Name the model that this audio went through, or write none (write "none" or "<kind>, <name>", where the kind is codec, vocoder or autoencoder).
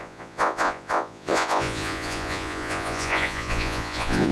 vocoder, Vocos